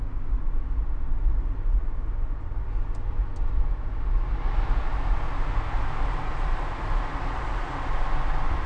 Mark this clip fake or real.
real